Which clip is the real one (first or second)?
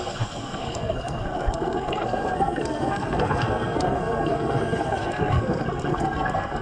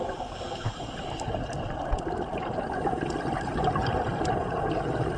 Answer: second